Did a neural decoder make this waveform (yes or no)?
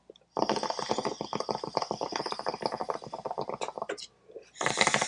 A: no